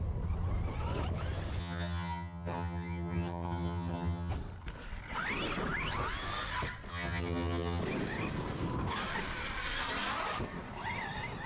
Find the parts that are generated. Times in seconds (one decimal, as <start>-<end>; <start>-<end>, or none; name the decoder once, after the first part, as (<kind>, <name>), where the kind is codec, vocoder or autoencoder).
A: 1.6-4.3 (vocoder, HiFi-GAN); 6.9-7.8